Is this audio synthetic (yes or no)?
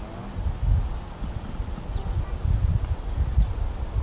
no